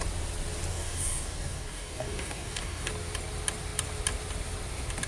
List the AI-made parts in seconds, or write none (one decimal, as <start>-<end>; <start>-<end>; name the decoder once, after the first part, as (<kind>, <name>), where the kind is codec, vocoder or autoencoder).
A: 0.7-2.9 (codec, DAC)